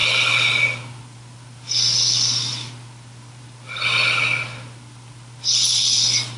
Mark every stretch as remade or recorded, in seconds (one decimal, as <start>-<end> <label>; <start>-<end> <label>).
0.0-6.4 recorded